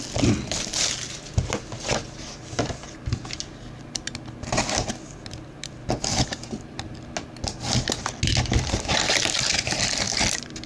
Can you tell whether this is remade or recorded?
recorded